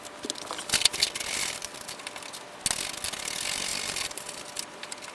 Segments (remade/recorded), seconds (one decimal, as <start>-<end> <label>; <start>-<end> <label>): 0.0-3.7 recorded; 3.7-4.3 remade; 4.3-5.1 recorded